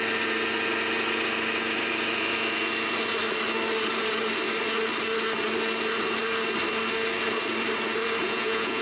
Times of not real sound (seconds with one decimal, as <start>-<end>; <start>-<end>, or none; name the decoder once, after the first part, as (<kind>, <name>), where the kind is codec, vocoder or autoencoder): 8.2-8.8 (vocoder, Vocos)